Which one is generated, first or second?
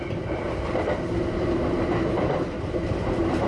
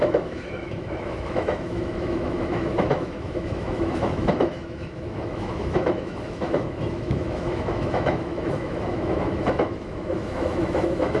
second